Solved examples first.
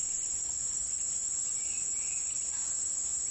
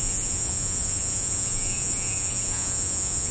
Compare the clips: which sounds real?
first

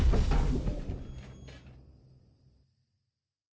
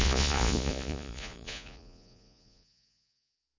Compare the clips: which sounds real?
first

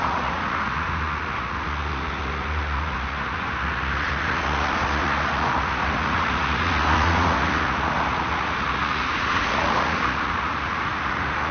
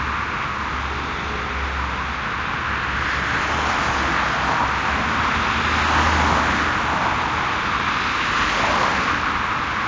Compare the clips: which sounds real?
second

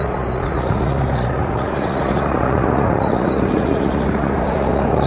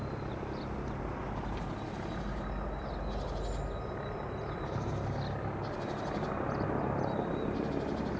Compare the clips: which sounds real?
second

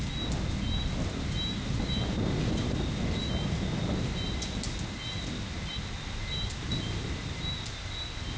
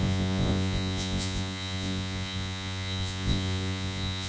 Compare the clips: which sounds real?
first